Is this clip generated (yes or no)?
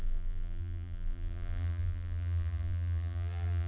yes